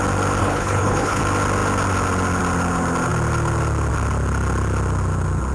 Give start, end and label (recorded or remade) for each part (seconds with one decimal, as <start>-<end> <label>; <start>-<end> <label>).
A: 0.0-0.4 recorded; 0.4-1.2 remade; 1.2-5.5 recorded